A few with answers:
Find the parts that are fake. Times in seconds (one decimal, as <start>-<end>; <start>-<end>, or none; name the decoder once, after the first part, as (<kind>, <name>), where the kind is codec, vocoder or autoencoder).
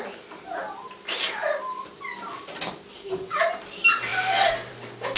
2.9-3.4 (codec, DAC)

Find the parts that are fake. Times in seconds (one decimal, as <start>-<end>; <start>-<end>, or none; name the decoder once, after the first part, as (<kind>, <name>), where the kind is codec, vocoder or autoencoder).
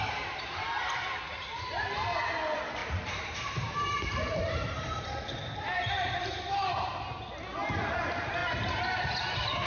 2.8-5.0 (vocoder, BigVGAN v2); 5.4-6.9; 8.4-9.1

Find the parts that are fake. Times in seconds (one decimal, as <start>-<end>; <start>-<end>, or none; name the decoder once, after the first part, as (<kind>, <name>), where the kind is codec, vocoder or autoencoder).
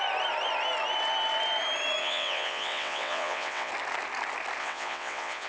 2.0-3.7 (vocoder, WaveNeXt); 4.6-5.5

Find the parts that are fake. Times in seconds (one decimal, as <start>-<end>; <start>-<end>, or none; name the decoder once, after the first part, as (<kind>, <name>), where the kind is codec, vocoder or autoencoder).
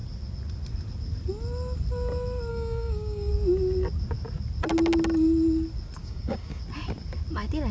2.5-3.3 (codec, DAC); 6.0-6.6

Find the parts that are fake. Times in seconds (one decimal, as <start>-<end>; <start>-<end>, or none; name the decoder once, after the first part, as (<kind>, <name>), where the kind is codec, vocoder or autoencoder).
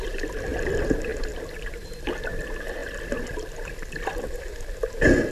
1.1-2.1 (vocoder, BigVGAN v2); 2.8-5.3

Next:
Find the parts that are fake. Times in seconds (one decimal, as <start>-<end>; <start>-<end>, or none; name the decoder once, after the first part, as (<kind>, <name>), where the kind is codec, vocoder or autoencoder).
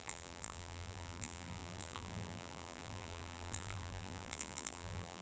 0.0-5.2 (vocoder, BigVGAN v2)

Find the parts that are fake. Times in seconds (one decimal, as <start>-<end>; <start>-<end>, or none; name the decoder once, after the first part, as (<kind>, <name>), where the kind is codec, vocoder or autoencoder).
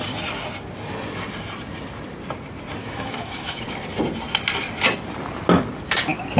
2.8-3.6 (autoencoder, DAC-VAE)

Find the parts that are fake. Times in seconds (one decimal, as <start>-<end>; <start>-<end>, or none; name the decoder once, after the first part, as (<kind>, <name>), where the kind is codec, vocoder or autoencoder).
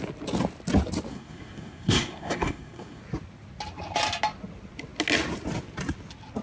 1.1-3.0 (codec, SNAC)